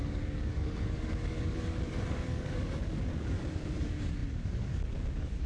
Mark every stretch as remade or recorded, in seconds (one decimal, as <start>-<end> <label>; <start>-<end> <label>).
0.0-5.5 remade